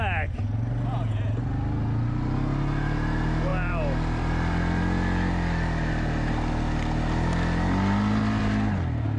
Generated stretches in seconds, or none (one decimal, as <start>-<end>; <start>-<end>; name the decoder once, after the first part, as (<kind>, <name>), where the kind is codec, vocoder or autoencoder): none